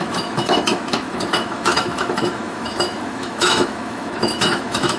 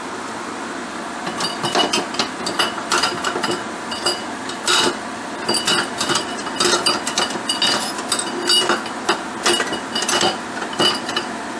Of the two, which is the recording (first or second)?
second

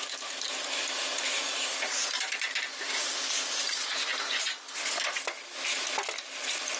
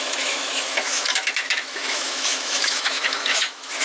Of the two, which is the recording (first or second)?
first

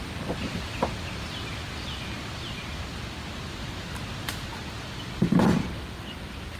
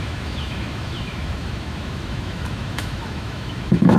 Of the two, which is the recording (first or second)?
first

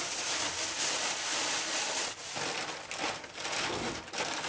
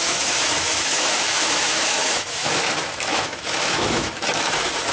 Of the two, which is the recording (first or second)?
first